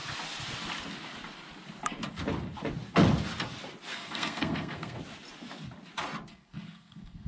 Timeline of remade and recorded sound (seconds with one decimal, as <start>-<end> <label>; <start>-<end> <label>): 0.0-3.9 recorded; 3.9-5.0 remade; 5.0-6.3 recorded; 6.3-7.3 remade